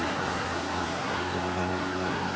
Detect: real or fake fake